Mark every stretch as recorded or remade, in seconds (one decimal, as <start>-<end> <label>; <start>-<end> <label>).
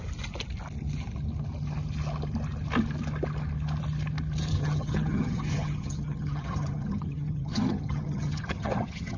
0.0-4.5 recorded; 4.5-9.2 remade